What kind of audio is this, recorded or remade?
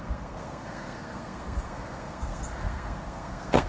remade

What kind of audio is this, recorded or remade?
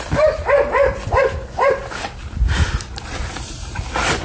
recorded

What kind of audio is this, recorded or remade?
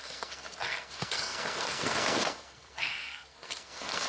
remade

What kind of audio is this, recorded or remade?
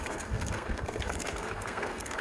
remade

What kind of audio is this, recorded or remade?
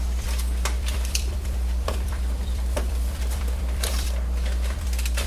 remade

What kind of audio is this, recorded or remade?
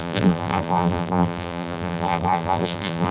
remade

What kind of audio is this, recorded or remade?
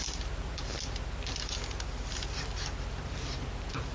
recorded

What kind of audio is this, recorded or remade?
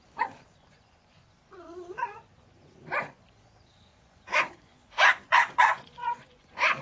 remade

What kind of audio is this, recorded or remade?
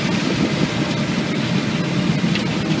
recorded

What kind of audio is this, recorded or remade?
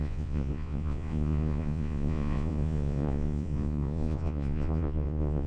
remade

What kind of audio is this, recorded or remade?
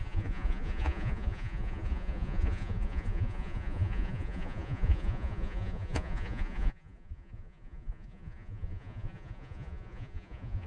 remade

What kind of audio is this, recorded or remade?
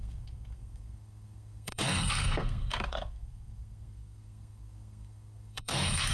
remade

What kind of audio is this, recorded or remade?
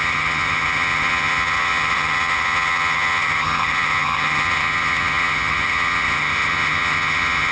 remade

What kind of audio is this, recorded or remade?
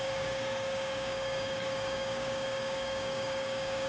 remade